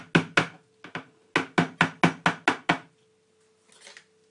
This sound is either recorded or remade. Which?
recorded